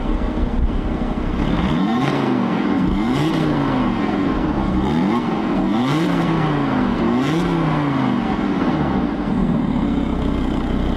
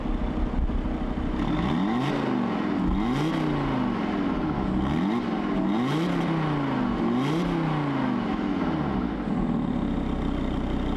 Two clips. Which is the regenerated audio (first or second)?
first